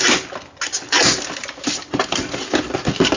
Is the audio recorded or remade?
recorded